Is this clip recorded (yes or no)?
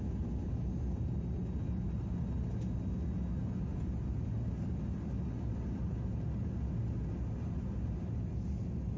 yes